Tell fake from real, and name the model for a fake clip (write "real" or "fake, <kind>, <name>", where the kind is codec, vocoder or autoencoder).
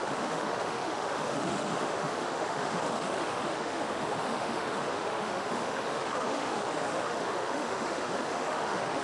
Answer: fake, autoencoder, DAC-VAE